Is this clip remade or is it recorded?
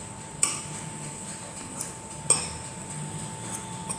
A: recorded